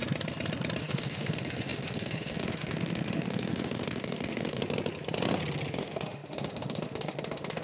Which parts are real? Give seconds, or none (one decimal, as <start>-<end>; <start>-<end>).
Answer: 0.0-0.8; 4.6-5.7